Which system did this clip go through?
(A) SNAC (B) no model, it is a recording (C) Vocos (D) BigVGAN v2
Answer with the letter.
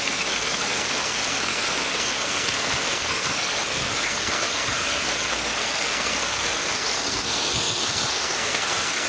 A